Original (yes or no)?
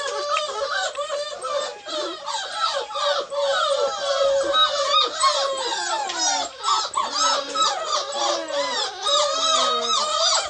yes